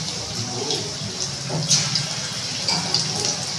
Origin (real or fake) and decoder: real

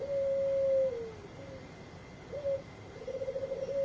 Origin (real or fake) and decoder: real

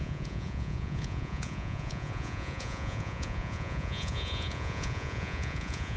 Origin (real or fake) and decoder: fake, vocoder, Vocos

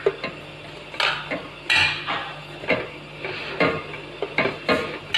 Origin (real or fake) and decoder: real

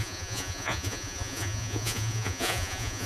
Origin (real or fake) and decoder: fake, vocoder, Vocos